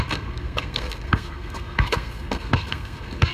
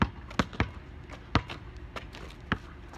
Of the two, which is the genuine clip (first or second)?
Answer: second